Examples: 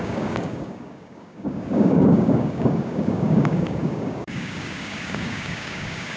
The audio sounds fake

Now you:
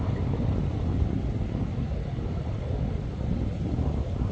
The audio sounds real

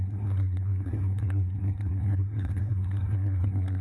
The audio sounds fake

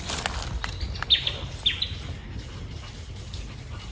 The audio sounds real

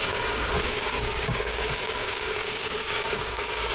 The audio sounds fake